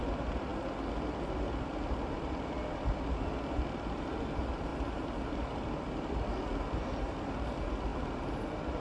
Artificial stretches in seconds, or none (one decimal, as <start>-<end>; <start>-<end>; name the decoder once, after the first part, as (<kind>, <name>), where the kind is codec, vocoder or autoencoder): none